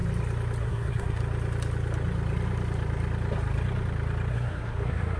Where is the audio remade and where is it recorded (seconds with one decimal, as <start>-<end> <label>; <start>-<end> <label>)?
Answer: 0.0-0.6 recorded; 0.6-1.2 remade; 1.2-4.3 recorded; 4.3-5.2 remade